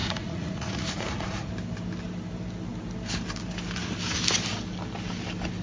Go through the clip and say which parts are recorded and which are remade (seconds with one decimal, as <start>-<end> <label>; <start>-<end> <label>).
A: 0.0-1.5 remade; 1.5-5.6 recorded